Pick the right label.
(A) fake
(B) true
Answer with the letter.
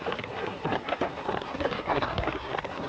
A